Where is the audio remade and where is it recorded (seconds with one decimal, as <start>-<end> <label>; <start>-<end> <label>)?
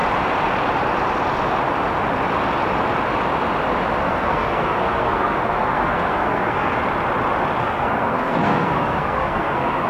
0.0-4.1 recorded; 4.1-6.8 remade; 6.8-7.6 recorded; 7.6-9.9 remade